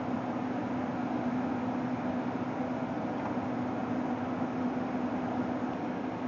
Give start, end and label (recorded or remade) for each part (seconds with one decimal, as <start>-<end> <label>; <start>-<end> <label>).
0.0-6.3 recorded